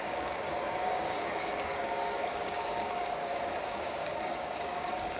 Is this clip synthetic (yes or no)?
yes